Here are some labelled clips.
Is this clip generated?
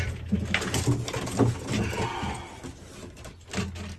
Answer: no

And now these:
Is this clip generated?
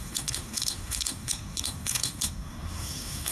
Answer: yes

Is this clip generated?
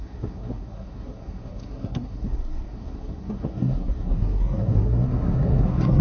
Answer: yes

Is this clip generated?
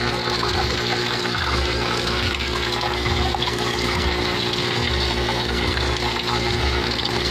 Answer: yes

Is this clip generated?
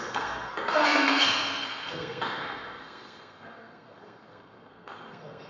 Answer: yes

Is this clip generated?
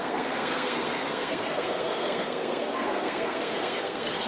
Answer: yes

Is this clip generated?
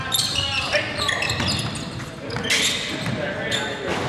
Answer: no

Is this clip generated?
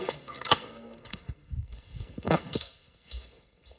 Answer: yes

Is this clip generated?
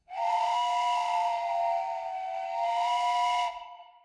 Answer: yes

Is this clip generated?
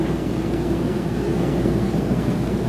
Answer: yes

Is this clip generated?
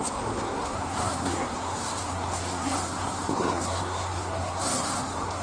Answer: yes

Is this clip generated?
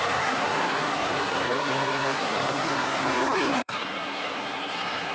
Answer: yes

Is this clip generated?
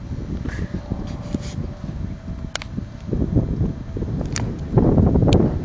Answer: no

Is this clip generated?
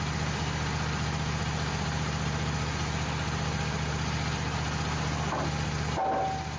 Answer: no